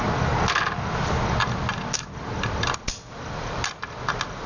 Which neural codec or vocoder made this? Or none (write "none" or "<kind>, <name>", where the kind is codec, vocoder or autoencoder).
none